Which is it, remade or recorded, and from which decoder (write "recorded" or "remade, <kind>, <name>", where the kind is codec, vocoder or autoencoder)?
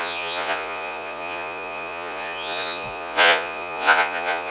remade, vocoder, Vocos